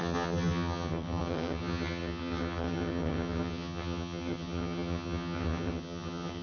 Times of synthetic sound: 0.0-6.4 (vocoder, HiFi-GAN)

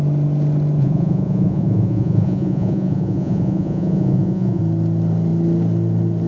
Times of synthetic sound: 0.8-4.6 (vocoder, Vocos)

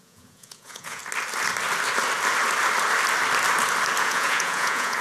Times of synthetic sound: 0.0-1.0 (vocoder, Vocos); 4.0-5.0

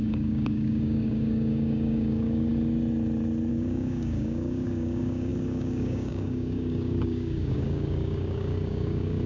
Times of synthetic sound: 0.0-2.5 (codec, DAC); 3.5-9.3